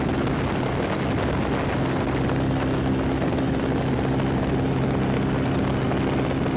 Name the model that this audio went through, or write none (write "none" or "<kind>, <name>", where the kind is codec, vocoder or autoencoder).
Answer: none